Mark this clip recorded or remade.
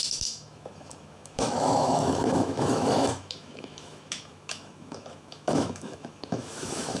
remade